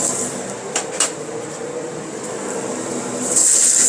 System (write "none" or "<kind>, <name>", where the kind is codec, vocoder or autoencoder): none